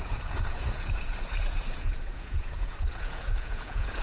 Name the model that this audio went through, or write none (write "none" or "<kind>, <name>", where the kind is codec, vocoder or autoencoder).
vocoder, Vocos